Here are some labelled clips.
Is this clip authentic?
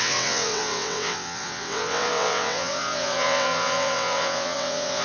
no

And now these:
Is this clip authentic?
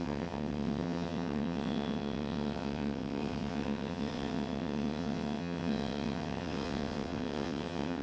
no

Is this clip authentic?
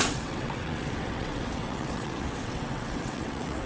no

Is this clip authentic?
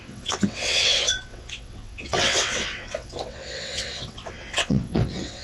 no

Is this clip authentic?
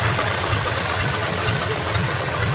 no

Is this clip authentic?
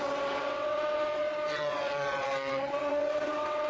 no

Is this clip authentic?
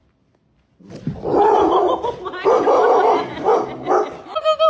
yes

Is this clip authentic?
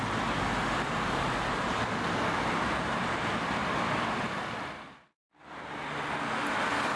yes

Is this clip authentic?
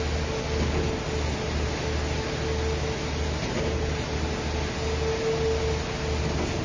yes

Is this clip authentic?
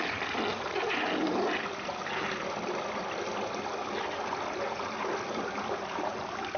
yes